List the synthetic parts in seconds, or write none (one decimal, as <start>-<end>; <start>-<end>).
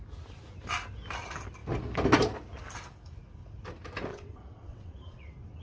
4.1-5.6